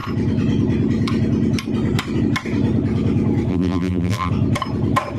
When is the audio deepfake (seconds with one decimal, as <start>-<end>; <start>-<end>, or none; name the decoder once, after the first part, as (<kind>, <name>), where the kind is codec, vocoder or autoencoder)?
3.5-4.3 (vocoder, BigVGAN v2)